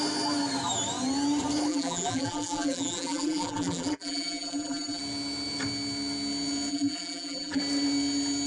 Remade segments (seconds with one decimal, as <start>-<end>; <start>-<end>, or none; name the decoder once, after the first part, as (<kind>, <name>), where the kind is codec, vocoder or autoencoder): 1.7-5.0 (vocoder, BigVGAN v2); 6.7-7.6